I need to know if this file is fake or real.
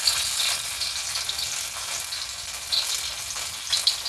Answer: real